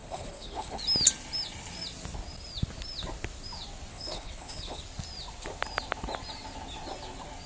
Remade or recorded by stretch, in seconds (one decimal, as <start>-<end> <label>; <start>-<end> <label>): 0.0-0.8 remade; 0.8-3.9 recorded; 3.9-4.8 remade; 4.8-7.5 recorded

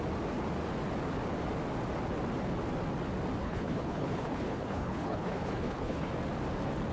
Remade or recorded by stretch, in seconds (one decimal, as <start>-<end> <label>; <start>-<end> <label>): 0.0-3.4 recorded; 3.4-6.1 remade; 6.1-6.9 recorded